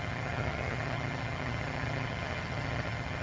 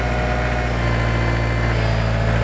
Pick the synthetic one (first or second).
first